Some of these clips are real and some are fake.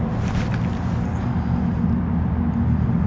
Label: real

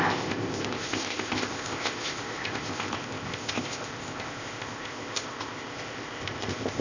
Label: fake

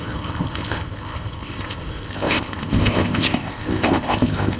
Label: fake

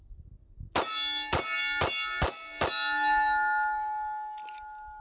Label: real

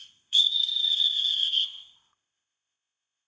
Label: fake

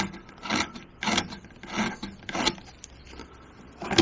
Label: real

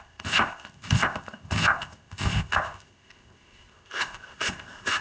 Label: fake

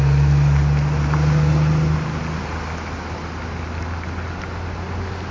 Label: real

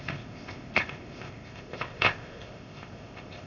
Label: fake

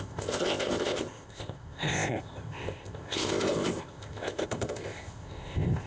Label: fake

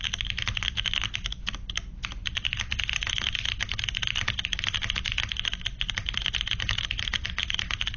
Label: real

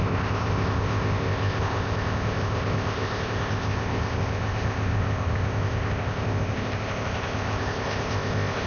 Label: fake